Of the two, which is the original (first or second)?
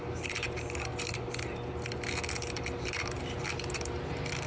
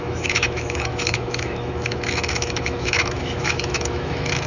first